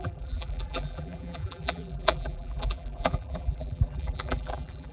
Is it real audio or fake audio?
fake